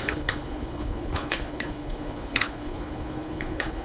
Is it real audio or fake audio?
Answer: fake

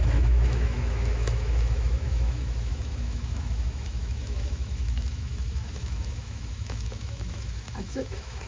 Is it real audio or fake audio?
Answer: fake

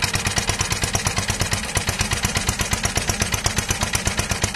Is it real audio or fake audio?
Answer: real